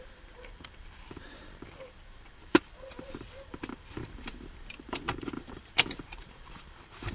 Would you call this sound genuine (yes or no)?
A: no